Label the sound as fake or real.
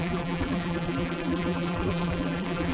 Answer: fake